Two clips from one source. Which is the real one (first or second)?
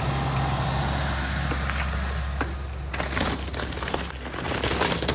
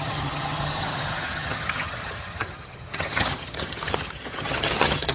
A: first